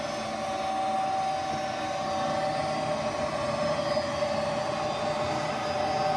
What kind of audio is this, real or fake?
real